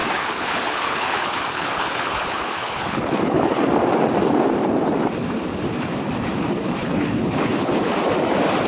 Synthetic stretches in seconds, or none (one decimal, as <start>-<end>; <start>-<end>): 0.0-3.7; 6.8-7.9